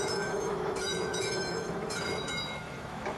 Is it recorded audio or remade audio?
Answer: remade